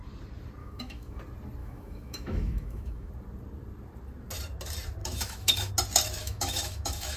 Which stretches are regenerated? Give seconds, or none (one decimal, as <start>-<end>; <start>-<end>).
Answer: 0.6-1.2; 1.6-3.1; 5.0-5.7; 6.2-7.2